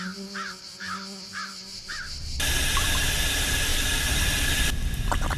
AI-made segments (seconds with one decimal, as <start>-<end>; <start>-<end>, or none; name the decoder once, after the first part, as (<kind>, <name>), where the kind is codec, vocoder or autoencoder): 3.7-4.2 (vocoder, BigVGAN v2)